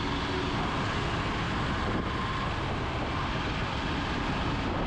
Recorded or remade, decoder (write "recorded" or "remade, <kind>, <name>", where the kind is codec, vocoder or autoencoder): recorded